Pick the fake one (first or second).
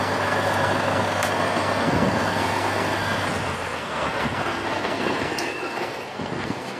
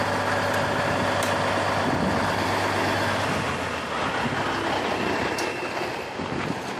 first